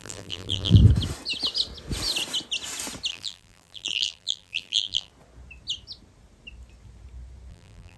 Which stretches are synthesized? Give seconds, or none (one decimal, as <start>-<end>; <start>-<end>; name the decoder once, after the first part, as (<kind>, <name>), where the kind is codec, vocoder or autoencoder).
0.0-0.8 (vocoder, BigVGAN v2); 3.1-5.1; 7.5-8.0